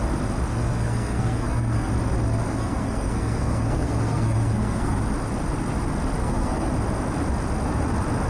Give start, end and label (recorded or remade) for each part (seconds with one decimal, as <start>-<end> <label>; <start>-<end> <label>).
0.0-0.5 recorded; 0.5-1.9 remade; 1.9-2.5 recorded; 2.5-5.0 remade; 5.0-6.2 recorded; 6.2-6.7 remade; 6.7-8.3 recorded